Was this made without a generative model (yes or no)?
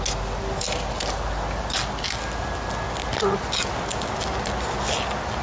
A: yes